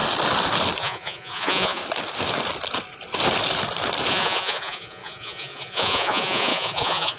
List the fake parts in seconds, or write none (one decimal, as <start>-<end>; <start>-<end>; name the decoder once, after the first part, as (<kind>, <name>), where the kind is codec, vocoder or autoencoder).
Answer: 0.8-1.8 (vocoder, Vocos); 4.1-7.2